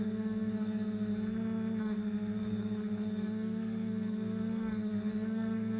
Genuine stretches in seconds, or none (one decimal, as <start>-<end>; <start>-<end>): 1.1-1.8